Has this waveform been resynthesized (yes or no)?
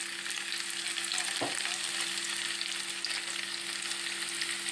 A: no